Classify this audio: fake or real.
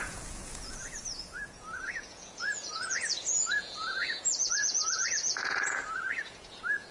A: fake